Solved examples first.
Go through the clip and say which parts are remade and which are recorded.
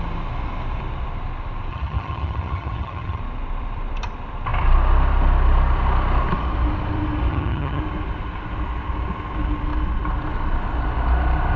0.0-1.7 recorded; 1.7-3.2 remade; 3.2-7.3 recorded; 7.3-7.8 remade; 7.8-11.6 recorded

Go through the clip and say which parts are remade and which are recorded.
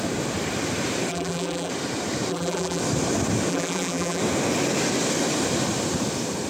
0.0-1.1 recorded; 1.1-1.7 remade; 1.7-2.3 recorded; 2.3-2.8 remade; 2.8-3.5 recorded; 3.5-4.2 remade; 4.2-6.5 recorded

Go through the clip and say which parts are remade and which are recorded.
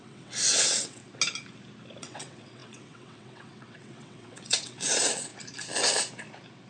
0.0-1.0 remade; 1.0-2.0 recorded; 2.0-5.3 remade; 5.3-6.7 recorded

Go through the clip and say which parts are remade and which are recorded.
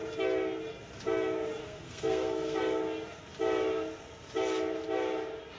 0.0-1.6 recorded; 1.6-2.6 remade; 2.6-5.6 recorded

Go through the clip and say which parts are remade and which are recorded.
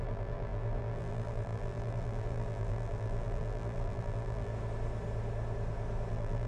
0.0-4.5 remade; 4.5-6.1 recorded; 6.1-6.5 remade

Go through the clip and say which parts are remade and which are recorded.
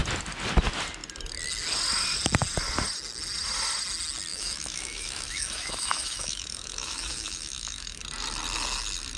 0.0-4.3 recorded; 4.3-8.0 remade; 8.0-9.2 recorded